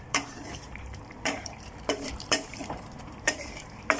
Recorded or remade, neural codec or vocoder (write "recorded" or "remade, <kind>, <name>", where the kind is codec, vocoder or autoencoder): remade, vocoder, BigVGAN v2